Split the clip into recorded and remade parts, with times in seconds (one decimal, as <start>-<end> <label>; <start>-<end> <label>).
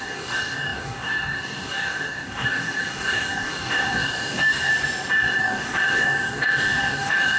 0.0-4.7 remade; 4.7-5.4 recorded; 5.4-7.4 remade